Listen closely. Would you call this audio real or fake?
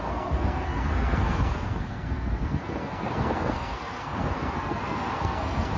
fake